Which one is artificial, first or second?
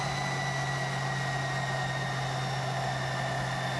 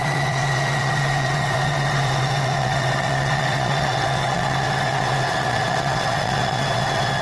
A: second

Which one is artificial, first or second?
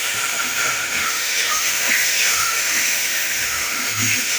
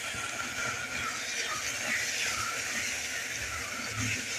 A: first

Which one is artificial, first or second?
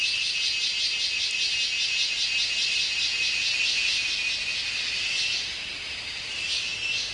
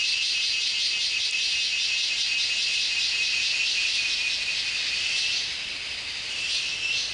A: second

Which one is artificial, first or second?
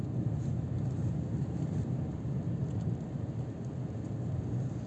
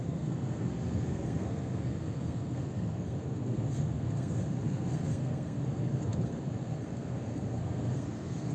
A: second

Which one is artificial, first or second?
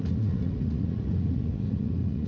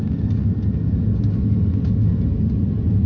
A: first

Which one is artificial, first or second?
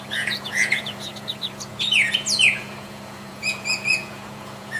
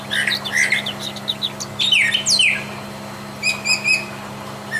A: first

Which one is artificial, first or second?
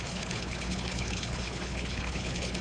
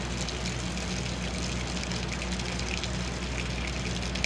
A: first